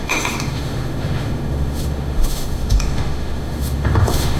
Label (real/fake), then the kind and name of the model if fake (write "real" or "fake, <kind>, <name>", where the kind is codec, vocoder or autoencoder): fake, autoencoder, DAC-VAE